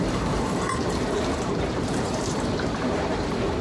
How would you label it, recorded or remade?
remade